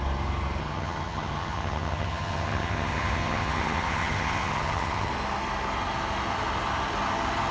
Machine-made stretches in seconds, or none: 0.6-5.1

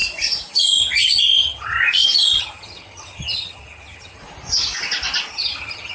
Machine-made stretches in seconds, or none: 0.8-1.8; 2.4-4.2; 5.3-5.9